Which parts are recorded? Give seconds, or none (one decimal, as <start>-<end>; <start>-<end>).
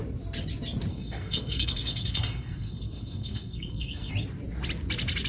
0.0-0.9; 4.1-5.3